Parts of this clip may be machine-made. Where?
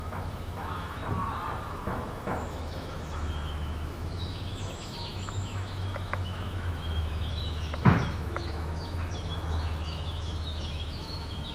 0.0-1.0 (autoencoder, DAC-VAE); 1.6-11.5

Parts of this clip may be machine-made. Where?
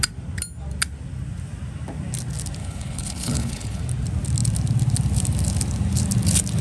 2.6-3.8 (codec, HILCodec)